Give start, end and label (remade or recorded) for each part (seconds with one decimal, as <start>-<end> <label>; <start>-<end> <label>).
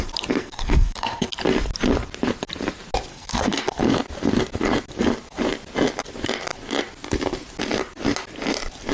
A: 0.0-0.4 recorded; 0.4-1.3 remade; 1.3-3.1 recorded; 3.1-3.8 remade; 3.8-8.9 recorded